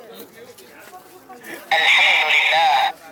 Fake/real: real